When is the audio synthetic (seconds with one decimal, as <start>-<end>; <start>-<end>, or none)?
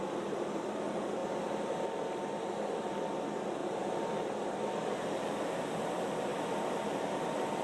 0.0-1.2; 2.8-7.6